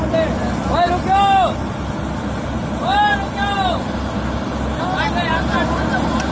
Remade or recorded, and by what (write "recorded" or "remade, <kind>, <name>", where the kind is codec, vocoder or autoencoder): recorded